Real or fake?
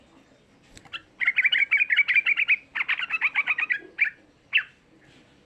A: real